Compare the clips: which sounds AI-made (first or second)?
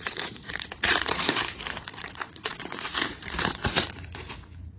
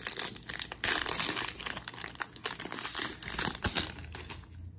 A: first